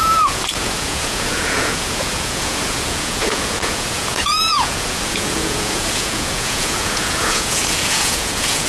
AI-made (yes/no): yes